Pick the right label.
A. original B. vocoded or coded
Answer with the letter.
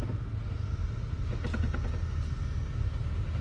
A